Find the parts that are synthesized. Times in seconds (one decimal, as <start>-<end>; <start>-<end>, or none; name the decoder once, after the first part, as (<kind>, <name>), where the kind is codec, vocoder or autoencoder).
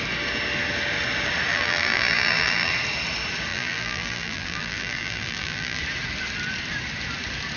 1.5-2.7 (vocoder, BigVGAN v2); 3.5-5.8